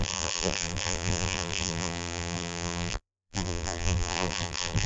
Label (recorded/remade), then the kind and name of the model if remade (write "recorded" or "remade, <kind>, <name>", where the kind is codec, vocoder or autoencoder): remade, vocoder, BigVGAN v2